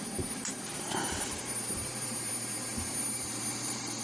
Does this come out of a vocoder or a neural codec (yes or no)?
yes